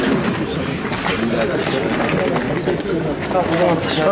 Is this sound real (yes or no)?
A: yes